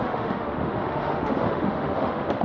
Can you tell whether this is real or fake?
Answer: fake